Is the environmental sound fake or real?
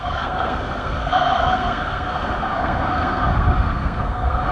fake